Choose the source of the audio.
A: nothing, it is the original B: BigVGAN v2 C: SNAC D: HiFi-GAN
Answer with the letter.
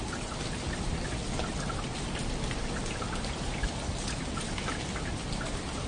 A